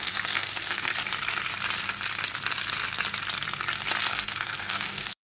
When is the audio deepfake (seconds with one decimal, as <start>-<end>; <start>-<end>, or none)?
0.0-0.9; 4.1-5.3